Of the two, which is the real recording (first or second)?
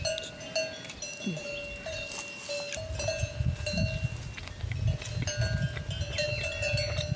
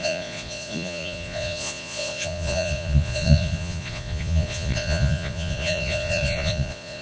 first